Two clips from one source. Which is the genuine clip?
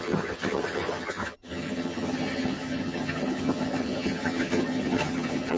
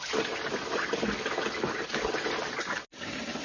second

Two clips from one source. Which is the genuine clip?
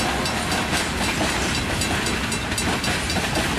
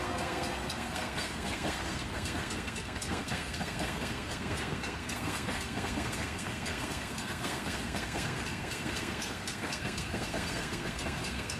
first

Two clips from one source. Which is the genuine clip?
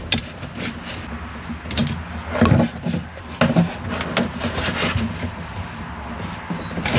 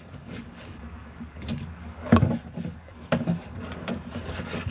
first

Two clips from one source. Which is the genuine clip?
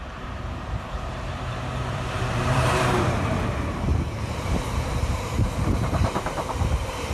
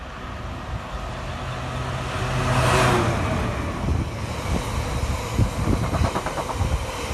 second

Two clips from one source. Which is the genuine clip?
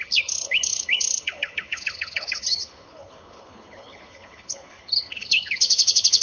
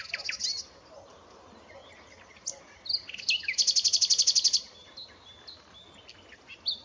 second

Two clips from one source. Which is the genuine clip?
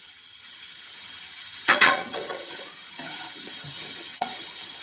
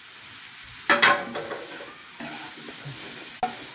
second